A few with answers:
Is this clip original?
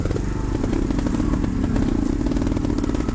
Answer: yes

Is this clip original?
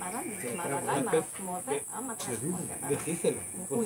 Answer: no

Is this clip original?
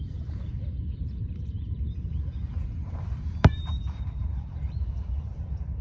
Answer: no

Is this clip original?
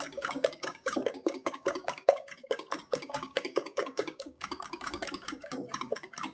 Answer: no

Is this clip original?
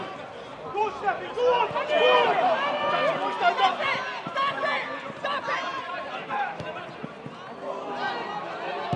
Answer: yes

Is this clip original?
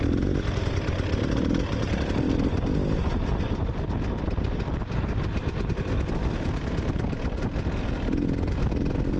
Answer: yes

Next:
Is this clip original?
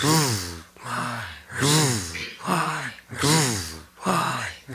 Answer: yes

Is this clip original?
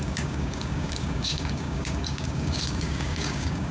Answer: no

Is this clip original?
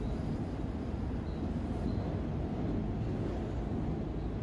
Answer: yes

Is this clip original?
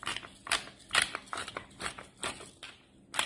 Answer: yes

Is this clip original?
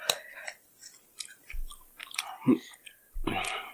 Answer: yes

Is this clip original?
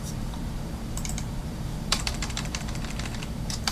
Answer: no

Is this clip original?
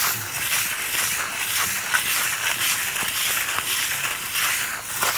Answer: yes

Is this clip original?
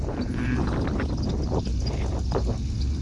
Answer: yes